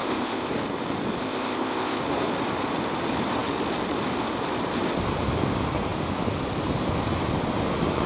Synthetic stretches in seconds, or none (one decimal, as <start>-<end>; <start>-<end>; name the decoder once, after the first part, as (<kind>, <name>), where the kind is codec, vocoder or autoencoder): 0.0-0.5 (codec, ZipCodec); 1.2-2.0